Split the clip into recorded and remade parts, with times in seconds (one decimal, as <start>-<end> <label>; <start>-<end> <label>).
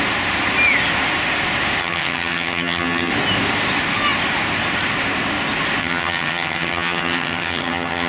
0.0-1.8 recorded; 1.8-3.1 remade; 3.1-5.8 recorded; 5.8-8.1 remade